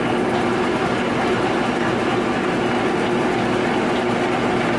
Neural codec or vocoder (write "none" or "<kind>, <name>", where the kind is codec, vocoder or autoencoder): none